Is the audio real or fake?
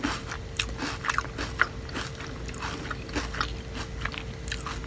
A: real